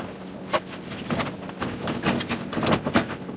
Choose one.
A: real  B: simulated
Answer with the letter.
A